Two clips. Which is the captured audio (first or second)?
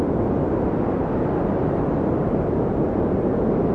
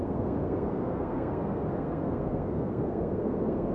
first